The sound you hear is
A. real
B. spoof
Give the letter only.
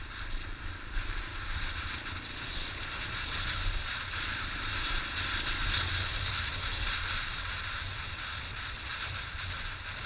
A